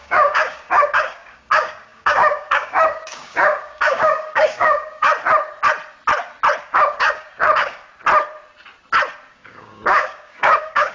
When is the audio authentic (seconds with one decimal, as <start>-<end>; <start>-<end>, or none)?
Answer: 5.1-6.6; 7.8-9.3